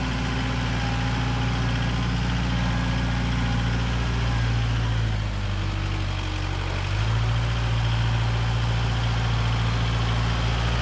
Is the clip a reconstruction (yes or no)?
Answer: no